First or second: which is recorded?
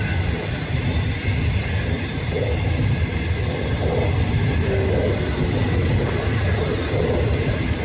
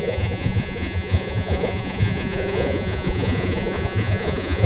first